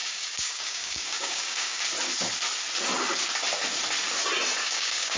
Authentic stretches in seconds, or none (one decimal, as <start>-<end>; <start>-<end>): 1.8-4.6